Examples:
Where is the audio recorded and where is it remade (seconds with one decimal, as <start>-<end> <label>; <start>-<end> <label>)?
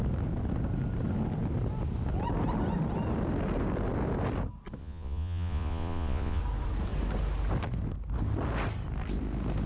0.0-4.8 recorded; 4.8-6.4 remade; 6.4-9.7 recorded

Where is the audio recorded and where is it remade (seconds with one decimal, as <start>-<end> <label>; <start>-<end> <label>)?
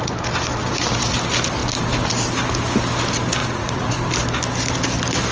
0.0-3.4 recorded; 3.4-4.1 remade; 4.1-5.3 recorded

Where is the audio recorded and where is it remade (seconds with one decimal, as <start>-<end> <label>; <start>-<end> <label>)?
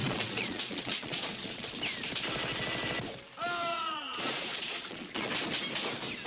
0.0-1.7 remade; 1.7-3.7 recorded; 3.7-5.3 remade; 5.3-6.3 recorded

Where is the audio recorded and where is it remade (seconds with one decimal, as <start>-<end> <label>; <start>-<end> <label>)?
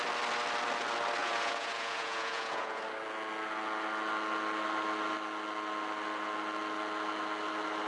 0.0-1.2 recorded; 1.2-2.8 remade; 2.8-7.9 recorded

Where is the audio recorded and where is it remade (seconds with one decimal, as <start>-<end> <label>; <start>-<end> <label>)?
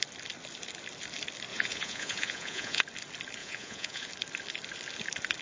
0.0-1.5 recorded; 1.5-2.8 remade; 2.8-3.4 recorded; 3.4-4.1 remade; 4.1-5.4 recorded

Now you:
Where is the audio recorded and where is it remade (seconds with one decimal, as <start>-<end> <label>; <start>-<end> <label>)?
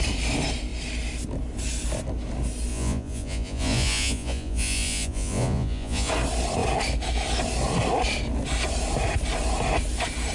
0.0-2.7 recorded; 2.7-6.1 remade; 6.1-10.3 recorded